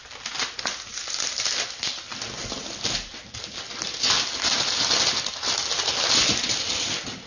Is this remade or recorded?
recorded